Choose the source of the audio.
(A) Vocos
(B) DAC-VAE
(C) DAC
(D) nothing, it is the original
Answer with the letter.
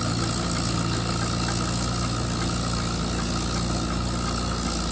D